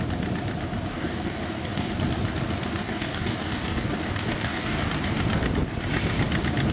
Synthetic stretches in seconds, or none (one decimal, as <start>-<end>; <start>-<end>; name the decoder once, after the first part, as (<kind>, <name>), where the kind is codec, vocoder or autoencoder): 0.9-1.9 (codec, DAC); 2.8-4.9